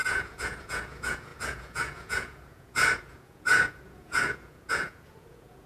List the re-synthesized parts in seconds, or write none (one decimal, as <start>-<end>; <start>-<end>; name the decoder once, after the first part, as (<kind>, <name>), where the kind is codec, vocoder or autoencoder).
0.0-5.7 (vocoder, Vocos)